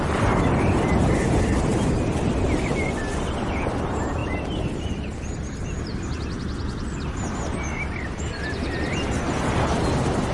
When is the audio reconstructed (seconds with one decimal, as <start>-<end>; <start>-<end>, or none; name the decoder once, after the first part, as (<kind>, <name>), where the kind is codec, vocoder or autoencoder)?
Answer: none